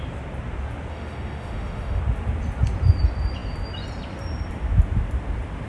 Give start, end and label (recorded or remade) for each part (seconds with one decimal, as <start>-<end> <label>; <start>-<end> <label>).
0.0-0.9 recorded; 0.9-2.0 remade; 2.0-5.7 recorded